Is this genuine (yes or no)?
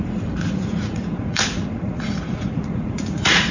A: no